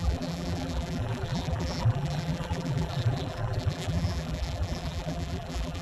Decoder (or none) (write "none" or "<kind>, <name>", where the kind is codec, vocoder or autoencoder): vocoder, BigVGAN v2